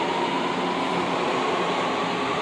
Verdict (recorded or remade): recorded